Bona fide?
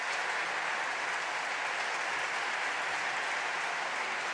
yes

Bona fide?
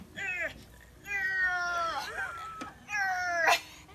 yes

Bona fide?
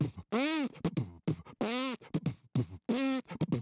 yes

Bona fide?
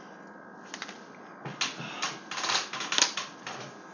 yes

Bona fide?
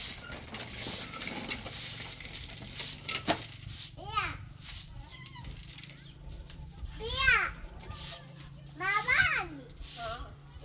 yes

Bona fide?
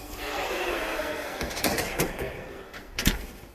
no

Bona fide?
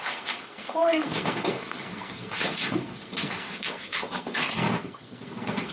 no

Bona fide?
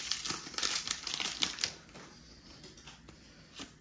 yes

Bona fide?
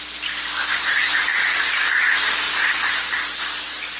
yes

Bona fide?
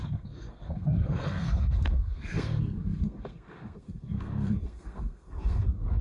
no